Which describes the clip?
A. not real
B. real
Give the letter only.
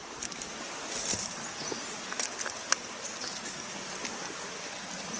B